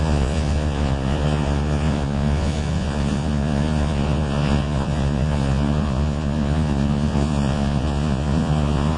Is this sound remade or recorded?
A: remade